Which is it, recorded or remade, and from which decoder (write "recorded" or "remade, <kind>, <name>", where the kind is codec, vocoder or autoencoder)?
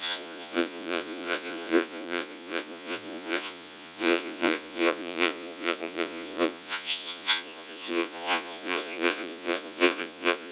remade, vocoder, Vocos